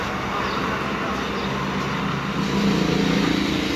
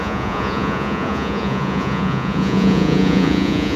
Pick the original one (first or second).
first